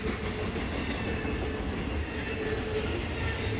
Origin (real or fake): real